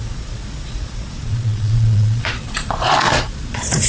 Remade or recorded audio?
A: remade